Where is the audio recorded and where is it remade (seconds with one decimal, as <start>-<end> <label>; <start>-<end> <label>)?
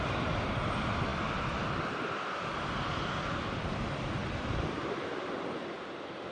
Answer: 0.0-6.3 recorded